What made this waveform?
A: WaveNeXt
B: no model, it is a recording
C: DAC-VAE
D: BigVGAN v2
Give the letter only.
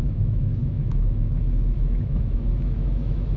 C